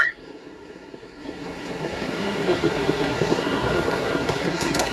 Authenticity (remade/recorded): remade